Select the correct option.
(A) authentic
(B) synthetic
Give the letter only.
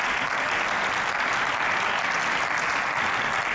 A